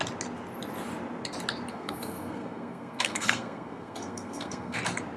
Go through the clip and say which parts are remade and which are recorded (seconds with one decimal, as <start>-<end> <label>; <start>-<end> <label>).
0.0-1.7 recorded; 1.7-4.8 remade; 4.8-5.2 recorded